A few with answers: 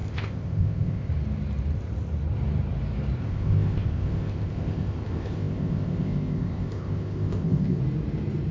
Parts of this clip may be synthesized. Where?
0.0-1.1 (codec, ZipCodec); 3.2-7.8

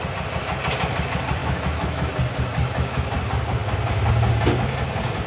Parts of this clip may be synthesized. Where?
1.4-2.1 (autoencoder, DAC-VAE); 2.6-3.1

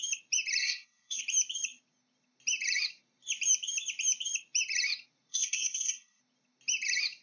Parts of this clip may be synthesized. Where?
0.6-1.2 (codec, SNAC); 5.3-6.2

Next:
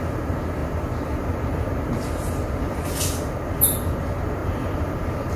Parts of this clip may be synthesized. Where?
4.4-5.4 (vocoder, BigVGAN v2)